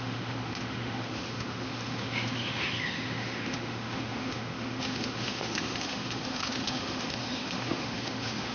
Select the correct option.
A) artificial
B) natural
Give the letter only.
A